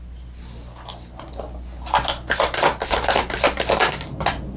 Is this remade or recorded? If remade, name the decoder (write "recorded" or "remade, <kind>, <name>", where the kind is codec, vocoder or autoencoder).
recorded